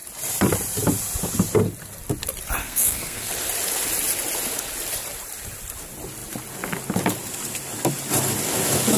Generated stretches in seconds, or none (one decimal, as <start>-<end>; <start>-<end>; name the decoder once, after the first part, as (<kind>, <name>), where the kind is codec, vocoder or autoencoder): 2.6-3.3 (codec, SNAC)